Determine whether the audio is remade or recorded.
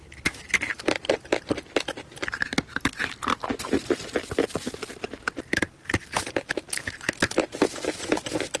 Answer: recorded